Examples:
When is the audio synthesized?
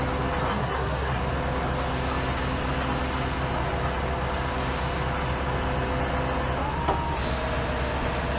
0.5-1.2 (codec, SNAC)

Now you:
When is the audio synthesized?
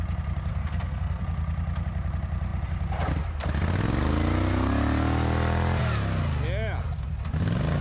0.5-1.2 (codec, SNAC)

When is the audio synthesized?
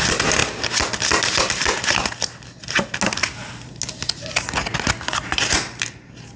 none